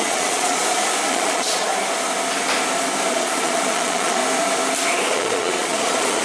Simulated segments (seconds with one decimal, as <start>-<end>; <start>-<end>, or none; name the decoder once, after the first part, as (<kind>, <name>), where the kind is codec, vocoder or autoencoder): 0.0-0.6 (vocoder, Vocos); 1.1-1.7; 3.1-4.2; 5.1-6.2